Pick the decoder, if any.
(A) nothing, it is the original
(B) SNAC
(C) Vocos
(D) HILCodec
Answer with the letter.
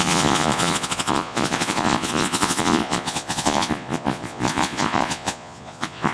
C